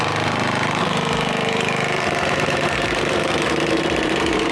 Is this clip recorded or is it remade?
remade